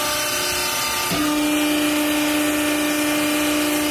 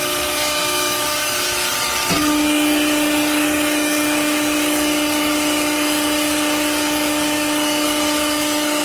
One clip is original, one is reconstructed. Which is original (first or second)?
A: first